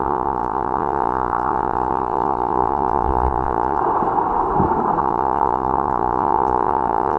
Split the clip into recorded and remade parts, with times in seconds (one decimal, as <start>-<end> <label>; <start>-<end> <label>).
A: 0.0-3.8 remade; 3.8-5.0 recorded; 5.0-7.2 remade